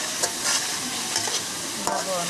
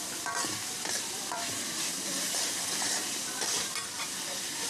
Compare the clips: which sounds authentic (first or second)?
first